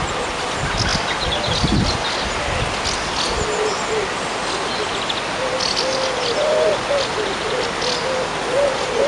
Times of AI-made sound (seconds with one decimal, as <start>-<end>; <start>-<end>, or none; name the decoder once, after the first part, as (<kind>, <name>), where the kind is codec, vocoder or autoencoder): none

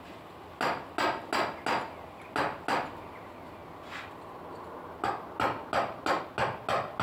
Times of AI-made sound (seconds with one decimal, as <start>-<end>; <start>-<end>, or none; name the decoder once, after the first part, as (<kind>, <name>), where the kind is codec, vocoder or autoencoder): none